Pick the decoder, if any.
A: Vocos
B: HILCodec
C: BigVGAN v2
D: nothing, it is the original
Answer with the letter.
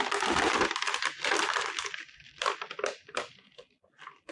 C